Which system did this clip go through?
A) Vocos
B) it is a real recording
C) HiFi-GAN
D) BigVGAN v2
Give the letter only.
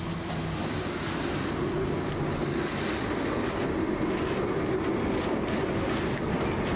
B